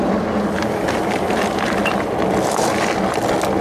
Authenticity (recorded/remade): recorded